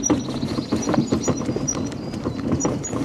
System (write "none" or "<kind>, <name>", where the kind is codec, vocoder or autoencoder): none